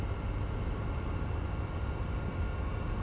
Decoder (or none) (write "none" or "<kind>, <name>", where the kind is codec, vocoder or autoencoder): none